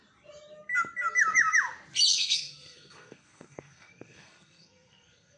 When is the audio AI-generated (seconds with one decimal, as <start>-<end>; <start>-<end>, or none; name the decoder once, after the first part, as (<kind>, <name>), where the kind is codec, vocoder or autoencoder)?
2.1-5.4 (codec, SNAC)